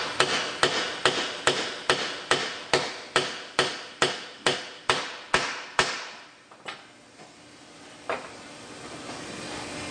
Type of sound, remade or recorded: recorded